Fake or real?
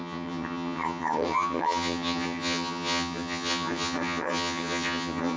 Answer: fake